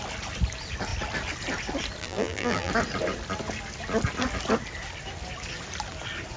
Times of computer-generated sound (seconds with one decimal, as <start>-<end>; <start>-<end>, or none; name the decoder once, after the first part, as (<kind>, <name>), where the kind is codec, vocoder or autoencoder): 2.0-2.7 (vocoder, BigVGAN v2)